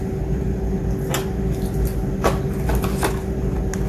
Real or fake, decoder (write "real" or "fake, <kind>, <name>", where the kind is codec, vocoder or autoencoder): real